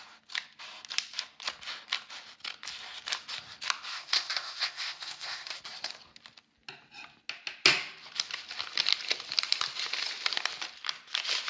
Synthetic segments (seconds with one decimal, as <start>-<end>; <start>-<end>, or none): 3.9-5.6